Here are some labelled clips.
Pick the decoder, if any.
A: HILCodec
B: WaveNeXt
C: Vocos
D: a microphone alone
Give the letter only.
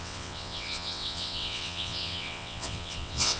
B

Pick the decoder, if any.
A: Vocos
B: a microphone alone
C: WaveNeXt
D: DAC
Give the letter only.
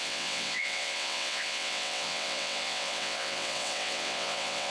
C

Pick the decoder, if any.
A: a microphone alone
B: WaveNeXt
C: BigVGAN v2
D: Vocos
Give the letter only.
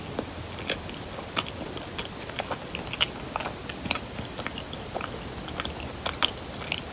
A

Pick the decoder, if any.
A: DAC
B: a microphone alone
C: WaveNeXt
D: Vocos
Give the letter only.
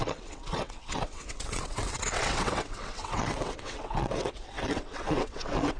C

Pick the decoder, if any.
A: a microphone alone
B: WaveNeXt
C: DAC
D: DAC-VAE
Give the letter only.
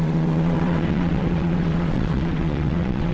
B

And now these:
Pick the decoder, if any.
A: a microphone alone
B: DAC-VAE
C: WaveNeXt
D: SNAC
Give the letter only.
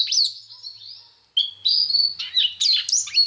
A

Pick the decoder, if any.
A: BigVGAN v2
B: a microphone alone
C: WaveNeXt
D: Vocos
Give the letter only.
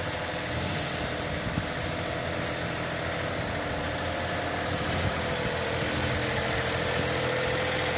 B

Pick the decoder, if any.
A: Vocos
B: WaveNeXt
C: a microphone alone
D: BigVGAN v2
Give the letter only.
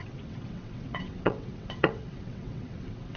B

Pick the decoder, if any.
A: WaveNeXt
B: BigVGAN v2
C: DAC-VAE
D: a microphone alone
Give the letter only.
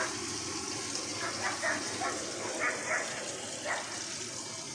D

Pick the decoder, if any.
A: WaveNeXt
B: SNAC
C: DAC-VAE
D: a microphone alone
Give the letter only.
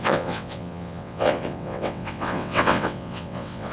A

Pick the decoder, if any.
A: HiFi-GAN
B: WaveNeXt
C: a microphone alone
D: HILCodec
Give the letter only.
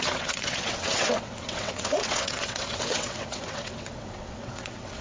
B